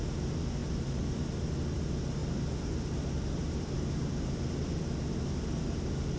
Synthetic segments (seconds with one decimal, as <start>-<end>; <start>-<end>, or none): 0.6-1.8; 2.2-4.8